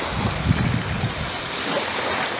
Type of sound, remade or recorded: recorded